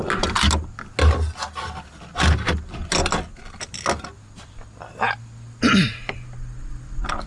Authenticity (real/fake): real